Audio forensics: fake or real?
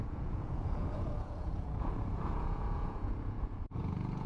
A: fake